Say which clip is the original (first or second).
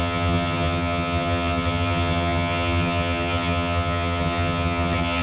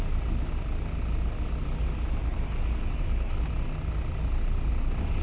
second